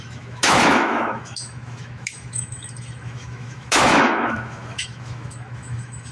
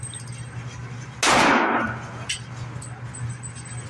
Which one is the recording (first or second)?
second